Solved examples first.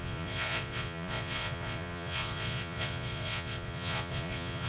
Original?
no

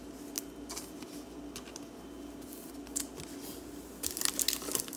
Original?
yes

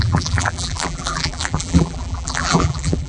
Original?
no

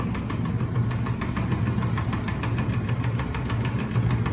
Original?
yes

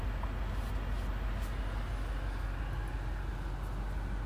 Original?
yes